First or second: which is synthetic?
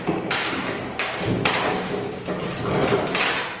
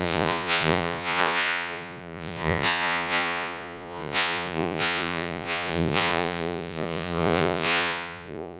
second